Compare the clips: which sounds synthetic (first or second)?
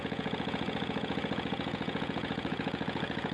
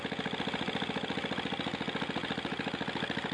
first